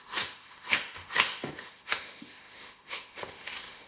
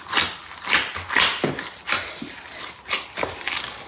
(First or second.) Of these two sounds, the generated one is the first